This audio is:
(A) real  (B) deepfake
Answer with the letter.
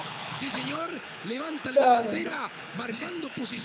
B